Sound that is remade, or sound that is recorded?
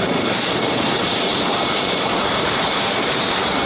remade